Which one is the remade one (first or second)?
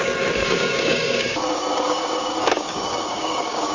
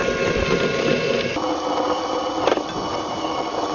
first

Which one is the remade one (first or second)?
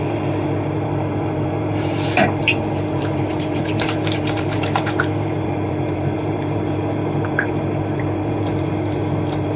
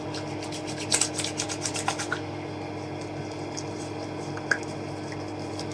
first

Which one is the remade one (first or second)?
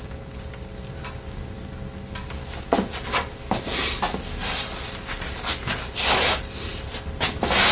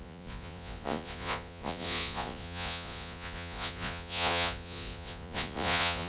second